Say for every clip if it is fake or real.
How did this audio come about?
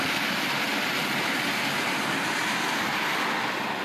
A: real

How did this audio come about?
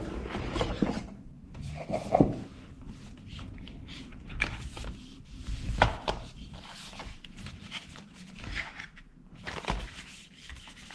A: fake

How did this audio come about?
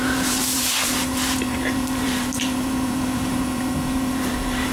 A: fake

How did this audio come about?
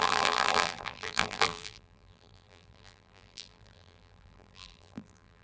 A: fake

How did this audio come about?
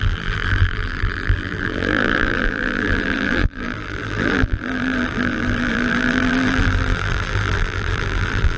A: fake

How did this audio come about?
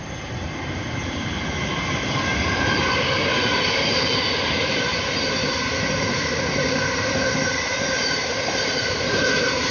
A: fake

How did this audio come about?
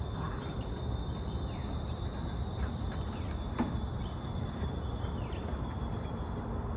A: fake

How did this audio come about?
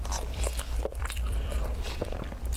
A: fake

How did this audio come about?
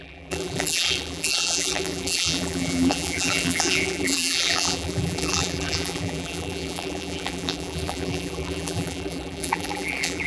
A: fake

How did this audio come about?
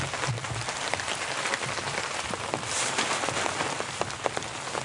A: real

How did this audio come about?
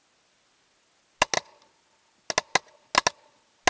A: real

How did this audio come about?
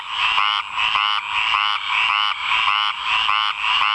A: real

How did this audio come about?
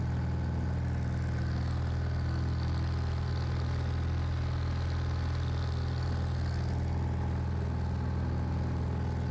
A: real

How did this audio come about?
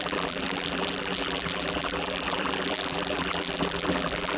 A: fake